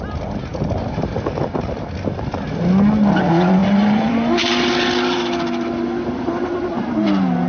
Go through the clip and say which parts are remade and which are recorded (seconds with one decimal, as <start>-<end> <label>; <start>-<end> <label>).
0.0-3.6 recorded; 3.6-4.5 remade; 4.5-7.5 recorded